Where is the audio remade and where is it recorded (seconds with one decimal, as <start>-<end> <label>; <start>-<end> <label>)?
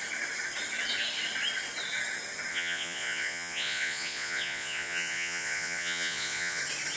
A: 0.0-2.5 recorded; 2.5-6.6 remade; 6.6-7.0 recorded